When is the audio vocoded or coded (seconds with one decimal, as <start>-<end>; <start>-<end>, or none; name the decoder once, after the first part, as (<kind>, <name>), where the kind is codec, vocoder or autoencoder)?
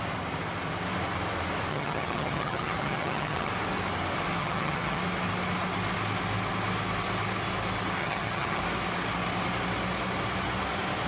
1.7-3.5 (vocoder, HiFi-GAN); 4.4-5.0; 8.0-8.6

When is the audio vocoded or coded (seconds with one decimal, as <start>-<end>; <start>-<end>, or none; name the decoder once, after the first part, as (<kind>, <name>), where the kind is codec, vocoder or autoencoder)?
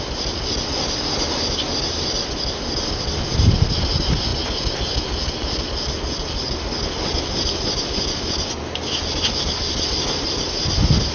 none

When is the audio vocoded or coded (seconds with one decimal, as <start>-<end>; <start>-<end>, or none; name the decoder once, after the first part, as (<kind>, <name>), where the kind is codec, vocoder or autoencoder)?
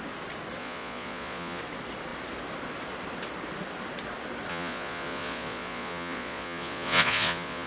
0.6-1.6 (vocoder, Vocos); 4.5-7.7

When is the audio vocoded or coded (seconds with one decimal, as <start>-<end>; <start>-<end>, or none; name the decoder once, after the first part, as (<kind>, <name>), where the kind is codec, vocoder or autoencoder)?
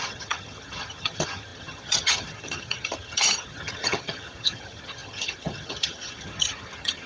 0.0-7.1 (vocoder, HiFi-GAN)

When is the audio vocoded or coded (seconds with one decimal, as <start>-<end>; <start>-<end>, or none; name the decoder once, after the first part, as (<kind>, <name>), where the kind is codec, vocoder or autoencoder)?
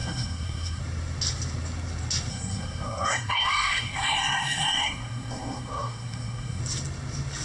0.0-0.8 (codec, SNAC); 2.3-6.6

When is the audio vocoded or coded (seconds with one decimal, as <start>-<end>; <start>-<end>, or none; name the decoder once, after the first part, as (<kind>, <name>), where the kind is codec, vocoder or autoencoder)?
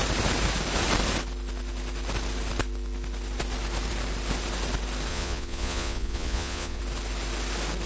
5.1-6.8 (vocoder, Vocos)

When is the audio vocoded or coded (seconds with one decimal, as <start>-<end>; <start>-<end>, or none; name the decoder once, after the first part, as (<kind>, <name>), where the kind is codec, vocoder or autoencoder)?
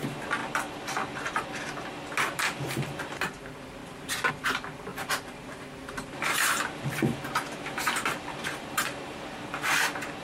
4.9-9.4 (vocoder, BigVGAN v2)